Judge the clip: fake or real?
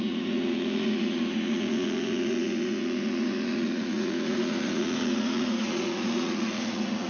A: fake